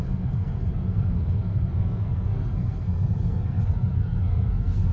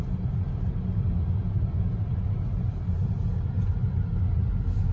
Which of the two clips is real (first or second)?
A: second